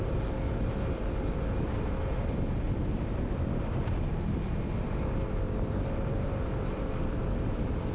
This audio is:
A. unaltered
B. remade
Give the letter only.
B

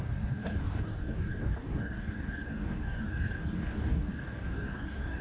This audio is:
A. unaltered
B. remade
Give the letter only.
B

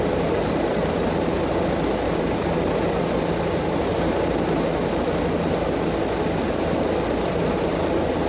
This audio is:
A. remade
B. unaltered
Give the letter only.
B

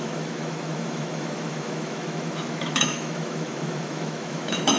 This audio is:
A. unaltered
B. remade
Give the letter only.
B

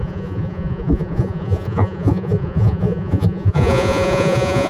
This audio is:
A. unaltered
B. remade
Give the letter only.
B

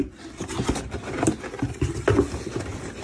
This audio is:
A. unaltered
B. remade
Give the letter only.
A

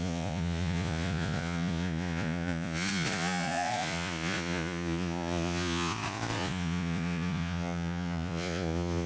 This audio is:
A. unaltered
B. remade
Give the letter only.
B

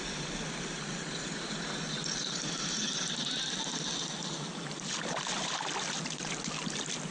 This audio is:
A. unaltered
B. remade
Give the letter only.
A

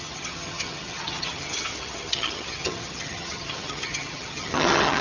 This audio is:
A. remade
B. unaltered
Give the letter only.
A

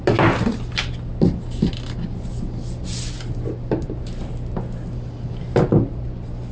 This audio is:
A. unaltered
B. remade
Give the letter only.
A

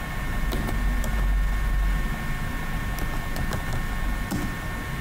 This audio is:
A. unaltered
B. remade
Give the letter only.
A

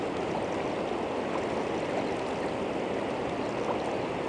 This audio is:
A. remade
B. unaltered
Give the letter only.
B